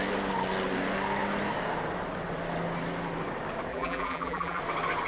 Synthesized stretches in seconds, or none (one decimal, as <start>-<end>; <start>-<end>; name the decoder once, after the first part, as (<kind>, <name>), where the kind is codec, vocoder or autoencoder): 3.7-4.6 (vocoder, BigVGAN v2)